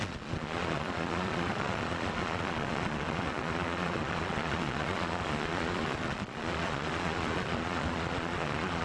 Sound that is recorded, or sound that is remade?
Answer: remade